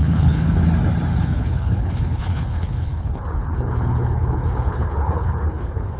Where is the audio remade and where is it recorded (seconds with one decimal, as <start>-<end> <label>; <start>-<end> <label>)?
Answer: 0.0-0.6 remade; 0.6-1.2 recorded; 1.2-6.0 remade